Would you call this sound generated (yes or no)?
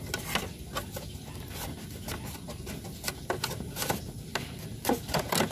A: no